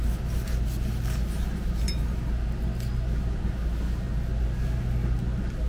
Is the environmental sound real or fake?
real